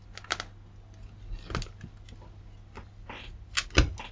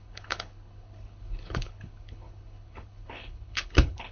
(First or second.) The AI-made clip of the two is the second